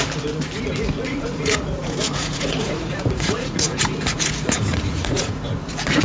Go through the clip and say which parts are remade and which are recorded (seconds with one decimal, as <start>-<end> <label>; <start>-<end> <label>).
0.0-1.1 recorded; 1.1-3.8 remade; 3.8-4.7 recorded; 4.7-5.5 remade; 5.5-6.0 recorded